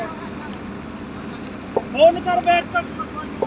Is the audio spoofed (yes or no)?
no